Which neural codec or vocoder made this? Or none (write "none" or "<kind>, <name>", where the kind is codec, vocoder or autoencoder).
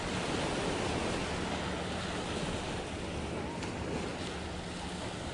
none